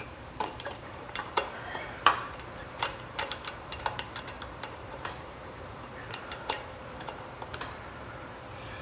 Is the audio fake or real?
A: fake